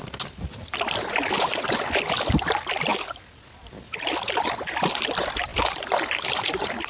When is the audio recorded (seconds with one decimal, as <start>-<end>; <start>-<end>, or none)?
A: 0.0-6.9